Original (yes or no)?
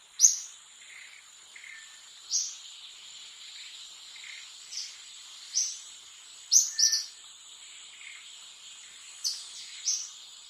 yes